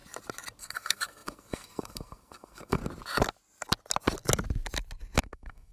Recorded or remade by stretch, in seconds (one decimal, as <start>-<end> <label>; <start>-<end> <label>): 0.0-0.6 recorded; 0.6-2.8 remade; 2.8-5.2 recorded; 5.2-5.7 remade